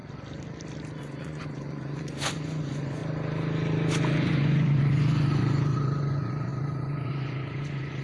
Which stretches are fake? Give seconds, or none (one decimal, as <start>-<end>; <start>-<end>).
1.0-3.0; 4.0-8.0